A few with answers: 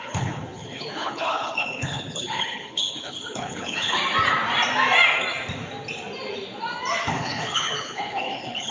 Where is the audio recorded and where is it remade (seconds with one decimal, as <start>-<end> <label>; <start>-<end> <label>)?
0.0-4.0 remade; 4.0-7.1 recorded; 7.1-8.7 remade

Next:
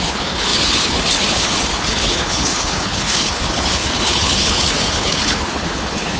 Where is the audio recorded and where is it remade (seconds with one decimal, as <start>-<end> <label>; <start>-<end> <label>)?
0.0-6.2 remade

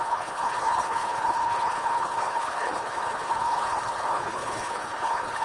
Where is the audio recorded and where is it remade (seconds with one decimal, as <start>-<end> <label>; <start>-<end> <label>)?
0.0-5.4 remade

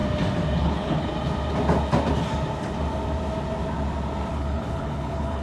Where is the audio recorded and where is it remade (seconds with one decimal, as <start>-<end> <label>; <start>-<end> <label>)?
0.0-0.6 recorded; 0.6-1.1 remade; 1.1-4.3 recorded; 4.3-5.4 remade

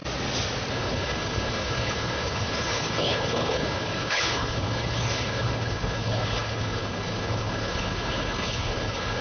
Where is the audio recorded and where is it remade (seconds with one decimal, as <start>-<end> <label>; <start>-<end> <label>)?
0.0-0.7 recorded; 0.7-9.2 remade